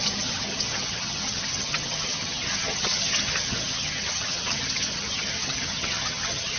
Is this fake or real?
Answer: fake